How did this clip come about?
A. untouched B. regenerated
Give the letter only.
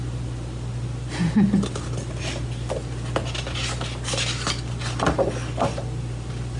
A